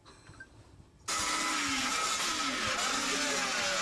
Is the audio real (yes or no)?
yes